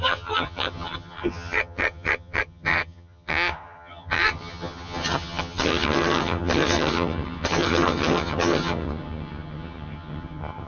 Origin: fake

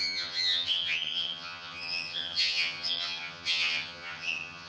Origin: fake